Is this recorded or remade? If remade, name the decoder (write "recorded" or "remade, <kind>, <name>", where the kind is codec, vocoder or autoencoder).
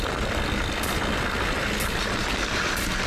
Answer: recorded